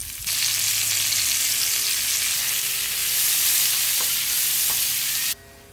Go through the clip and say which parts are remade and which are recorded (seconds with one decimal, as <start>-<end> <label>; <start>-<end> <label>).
0.0-3.0 recorded; 3.0-3.7 remade; 3.7-5.7 recorded